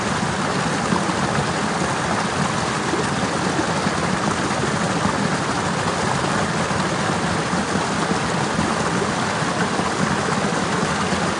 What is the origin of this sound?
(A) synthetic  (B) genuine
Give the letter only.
B